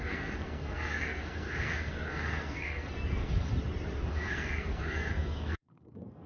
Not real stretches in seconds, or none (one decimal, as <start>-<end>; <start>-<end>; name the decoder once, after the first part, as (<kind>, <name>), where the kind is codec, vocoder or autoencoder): 0.0-3.5 (codec, SNAC); 4.1-6.3